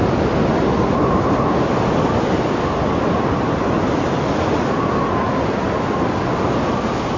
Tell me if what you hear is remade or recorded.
recorded